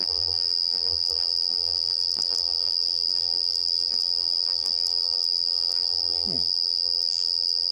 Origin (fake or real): fake